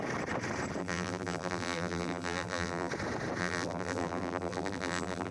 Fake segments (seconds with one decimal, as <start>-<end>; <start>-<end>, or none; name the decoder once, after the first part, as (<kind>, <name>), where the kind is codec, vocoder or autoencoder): 0.8-2.9 (vocoder, BigVGAN v2); 3.4-5.3